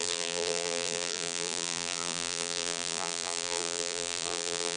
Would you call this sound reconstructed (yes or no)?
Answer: yes